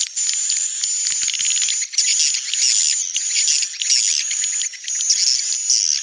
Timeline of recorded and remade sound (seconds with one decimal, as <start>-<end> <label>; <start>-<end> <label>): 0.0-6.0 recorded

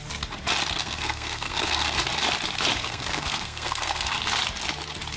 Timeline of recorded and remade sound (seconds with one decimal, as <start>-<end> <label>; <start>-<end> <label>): 0.0-0.8 recorded; 0.8-1.9 remade; 1.9-2.8 recorded; 2.8-4.2 remade; 4.2-5.2 recorded

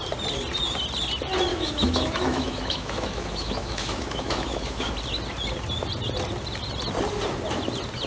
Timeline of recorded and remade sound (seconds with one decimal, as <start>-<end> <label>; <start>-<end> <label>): 0.0-1.5 recorded; 1.5-4.9 remade; 4.9-8.1 recorded